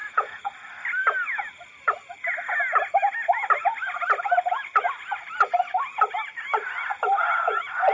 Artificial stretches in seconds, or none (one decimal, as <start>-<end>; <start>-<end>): 0.0-0.5